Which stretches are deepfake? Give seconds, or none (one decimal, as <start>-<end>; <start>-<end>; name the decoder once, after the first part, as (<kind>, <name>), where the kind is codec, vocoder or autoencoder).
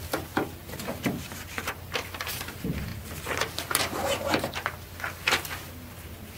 0.6-2.4 (vocoder, BigVGAN v2)